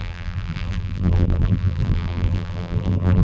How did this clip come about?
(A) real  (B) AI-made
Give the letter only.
B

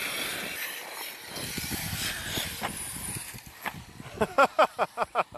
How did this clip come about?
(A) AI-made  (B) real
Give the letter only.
B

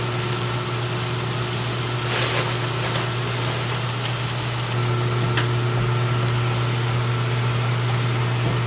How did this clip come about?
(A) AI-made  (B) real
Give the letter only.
B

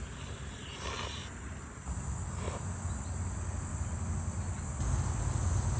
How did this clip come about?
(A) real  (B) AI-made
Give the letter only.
A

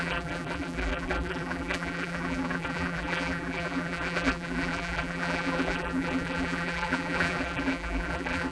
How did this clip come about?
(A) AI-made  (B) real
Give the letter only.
A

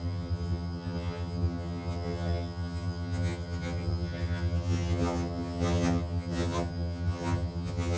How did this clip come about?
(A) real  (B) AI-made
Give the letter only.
B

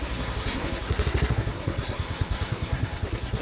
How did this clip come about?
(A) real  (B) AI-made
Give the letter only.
B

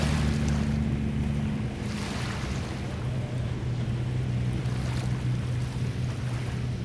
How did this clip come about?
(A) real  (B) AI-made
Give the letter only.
A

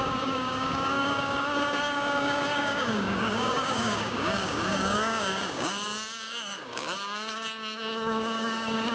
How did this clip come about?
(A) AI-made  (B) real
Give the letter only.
A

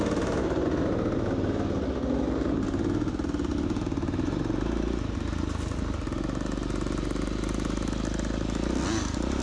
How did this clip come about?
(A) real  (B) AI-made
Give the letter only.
A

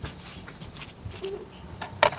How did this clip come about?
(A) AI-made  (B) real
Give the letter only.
B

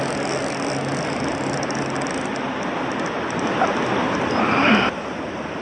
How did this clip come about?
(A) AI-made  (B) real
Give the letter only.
B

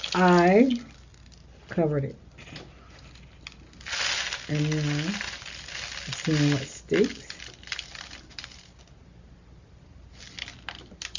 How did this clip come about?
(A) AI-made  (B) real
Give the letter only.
B